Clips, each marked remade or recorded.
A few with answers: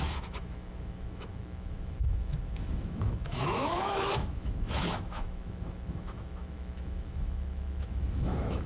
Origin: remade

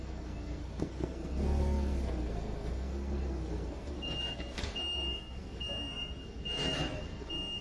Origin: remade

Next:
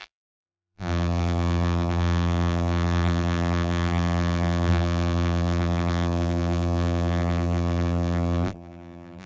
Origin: remade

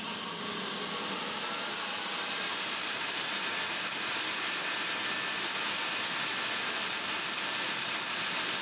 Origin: recorded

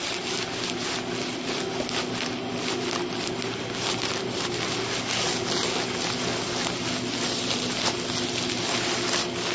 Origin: recorded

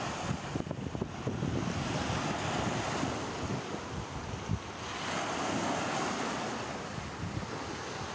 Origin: recorded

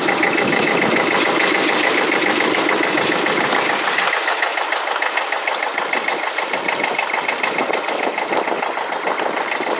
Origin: recorded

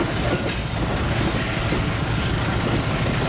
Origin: recorded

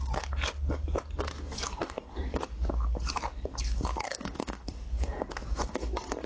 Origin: remade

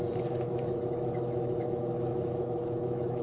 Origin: remade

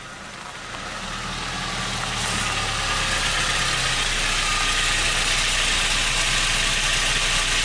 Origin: recorded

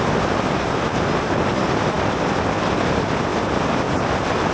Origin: recorded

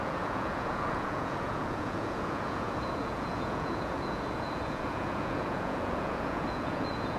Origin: remade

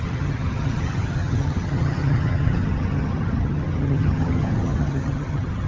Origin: remade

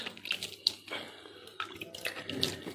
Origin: recorded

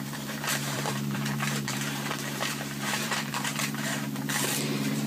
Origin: remade